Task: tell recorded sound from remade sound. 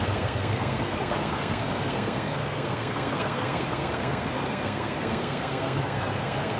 remade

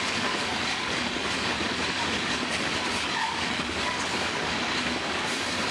remade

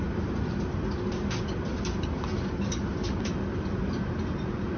recorded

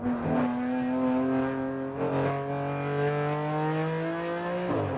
recorded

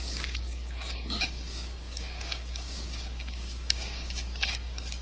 remade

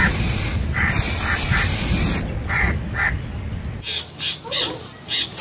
recorded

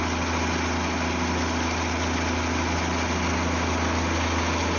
recorded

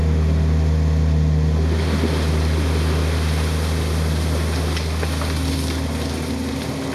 recorded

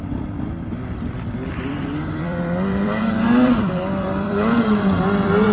remade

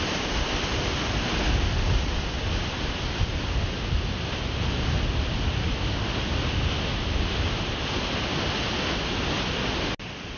recorded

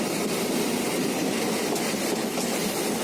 recorded